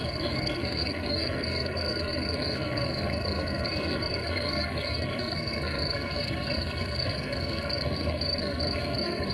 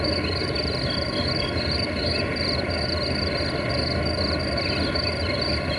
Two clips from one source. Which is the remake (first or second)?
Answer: first